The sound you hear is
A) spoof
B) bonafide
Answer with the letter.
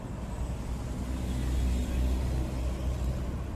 B